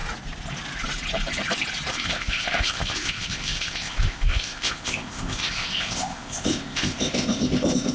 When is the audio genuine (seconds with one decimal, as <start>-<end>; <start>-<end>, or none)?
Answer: 0.0-1.9